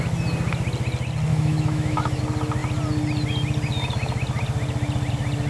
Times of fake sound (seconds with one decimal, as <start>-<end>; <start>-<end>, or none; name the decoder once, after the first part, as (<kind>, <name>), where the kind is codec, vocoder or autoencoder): 1.3-2.2 (autoencoder, DAC-VAE)

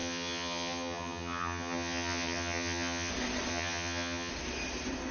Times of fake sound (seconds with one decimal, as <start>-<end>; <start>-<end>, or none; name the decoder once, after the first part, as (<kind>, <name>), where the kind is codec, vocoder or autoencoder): 0.0-3.1 (vocoder, HiFi-GAN); 3.5-4.3

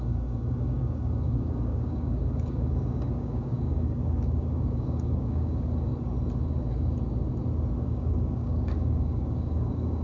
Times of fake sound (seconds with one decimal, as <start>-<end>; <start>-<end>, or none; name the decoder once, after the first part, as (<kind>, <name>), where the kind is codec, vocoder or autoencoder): 0.0-5.9 (codec, DAC); 7.8-10.0